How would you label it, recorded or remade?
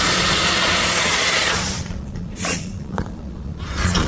remade